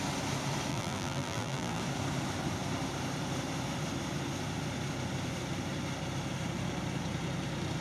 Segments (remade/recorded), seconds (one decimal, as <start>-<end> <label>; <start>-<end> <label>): 0.0-0.7 recorded; 0.7-1.8 remade; 1.8-7.8 recorded